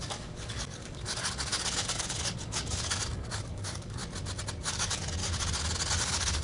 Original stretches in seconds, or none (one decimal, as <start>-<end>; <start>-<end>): 4.0-4.7; 5.2-6.0